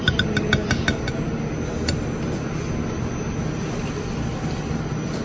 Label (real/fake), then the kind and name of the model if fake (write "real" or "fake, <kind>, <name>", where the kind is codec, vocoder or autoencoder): real